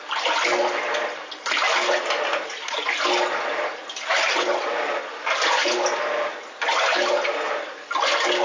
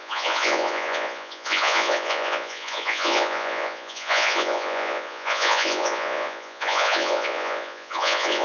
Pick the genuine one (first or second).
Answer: first